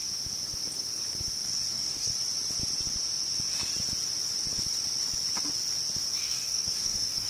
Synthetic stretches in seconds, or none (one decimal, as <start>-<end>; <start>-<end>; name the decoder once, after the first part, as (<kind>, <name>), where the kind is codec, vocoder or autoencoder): 1.7-2.1 (codec, DAC); 6.1-7.3